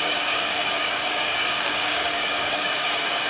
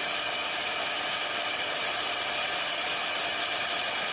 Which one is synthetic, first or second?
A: first